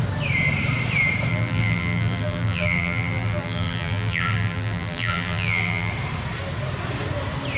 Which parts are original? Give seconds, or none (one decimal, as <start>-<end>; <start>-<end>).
0.0-1.3; 5.9-7.6